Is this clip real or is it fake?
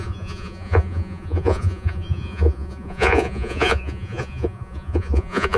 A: fake